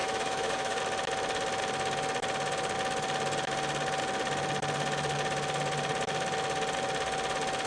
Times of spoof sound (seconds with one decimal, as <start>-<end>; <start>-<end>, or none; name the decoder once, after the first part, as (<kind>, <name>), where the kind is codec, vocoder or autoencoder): 0.0-0.8 (autoencoder, DAC-VAE)